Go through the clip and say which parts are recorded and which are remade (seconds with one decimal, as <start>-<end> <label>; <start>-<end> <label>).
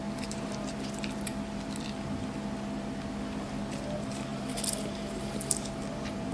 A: 0.0-6.3 remade